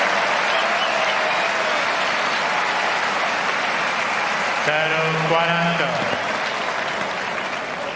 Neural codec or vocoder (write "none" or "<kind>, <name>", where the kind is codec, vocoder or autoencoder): none